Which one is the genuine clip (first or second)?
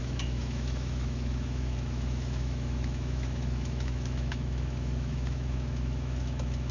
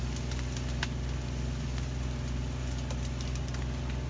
second